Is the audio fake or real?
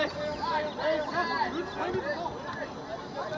real